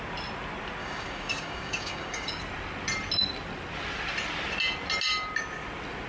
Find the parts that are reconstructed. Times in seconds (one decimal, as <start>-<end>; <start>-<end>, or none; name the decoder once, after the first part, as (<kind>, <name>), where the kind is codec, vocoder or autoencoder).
0.8-2.4 (codec, DAC)